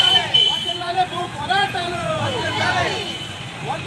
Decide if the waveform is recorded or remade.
remade